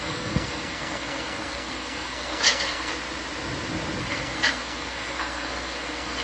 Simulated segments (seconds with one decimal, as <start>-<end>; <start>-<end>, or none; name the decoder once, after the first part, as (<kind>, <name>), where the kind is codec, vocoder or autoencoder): 0.0-2.9 (codec, SNAC); 4.0-6.2